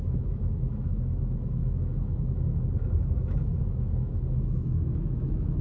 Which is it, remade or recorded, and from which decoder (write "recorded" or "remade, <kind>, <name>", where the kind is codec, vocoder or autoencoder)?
remade, autoencoder, DAC-VAE